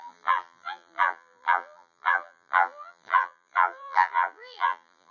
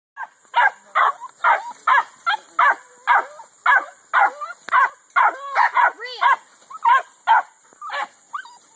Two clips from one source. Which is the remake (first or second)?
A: first